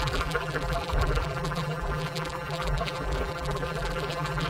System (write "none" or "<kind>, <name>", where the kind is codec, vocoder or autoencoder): vocoder, BigVGAN v2